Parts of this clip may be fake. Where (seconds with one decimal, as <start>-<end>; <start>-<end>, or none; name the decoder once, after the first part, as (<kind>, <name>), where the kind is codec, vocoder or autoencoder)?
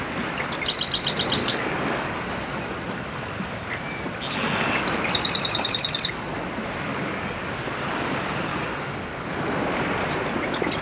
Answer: 1.4-2.3 (codec, DAC); 6.9-7.4; 8.5-9.4